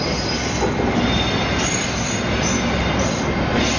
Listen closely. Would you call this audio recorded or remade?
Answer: recorded